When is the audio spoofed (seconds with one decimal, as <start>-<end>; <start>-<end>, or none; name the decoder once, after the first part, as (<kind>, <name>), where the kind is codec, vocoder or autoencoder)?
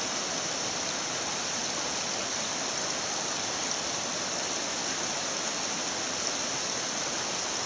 none